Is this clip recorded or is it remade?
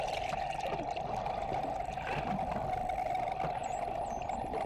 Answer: recorded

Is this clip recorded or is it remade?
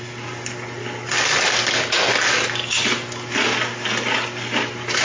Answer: recorded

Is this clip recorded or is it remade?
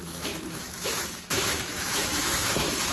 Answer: remade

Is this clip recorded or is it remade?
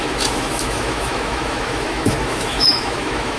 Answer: remade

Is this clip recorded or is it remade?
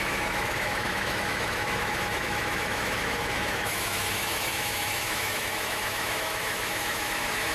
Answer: remade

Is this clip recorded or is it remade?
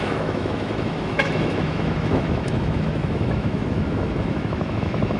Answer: remade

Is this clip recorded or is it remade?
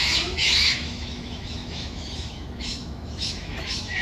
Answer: remade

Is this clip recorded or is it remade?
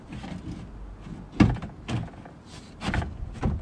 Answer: recorded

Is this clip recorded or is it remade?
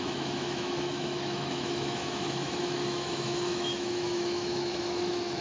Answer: remade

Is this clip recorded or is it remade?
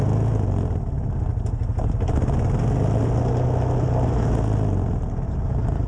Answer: recorded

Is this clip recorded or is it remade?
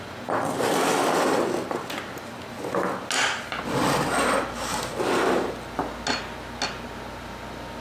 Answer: recorded